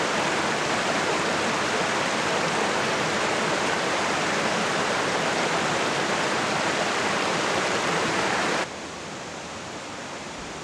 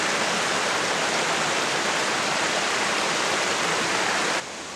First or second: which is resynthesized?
first